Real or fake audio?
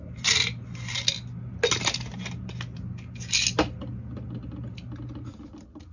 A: real